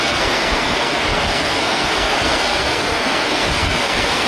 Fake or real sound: fake